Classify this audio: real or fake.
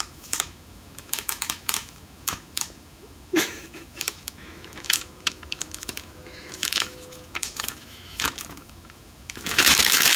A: fake